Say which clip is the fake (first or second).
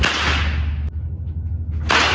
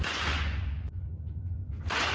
second